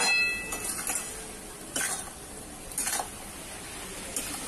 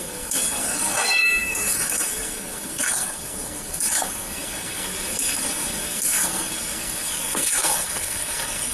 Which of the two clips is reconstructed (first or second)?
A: second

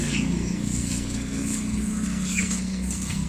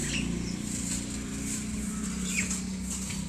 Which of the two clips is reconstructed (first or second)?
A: first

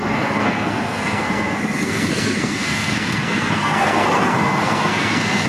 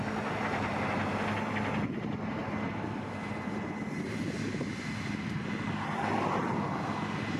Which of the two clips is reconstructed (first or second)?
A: first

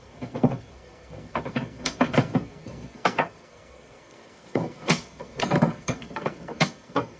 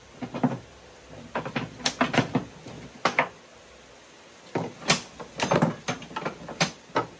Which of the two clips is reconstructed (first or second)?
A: first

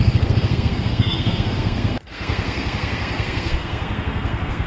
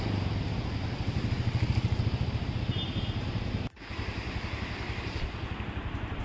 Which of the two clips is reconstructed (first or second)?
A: first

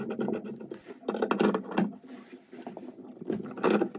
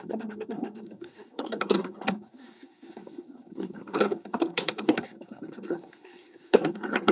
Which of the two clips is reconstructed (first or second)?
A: second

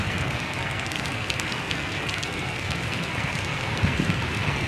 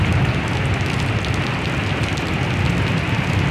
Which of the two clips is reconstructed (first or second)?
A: first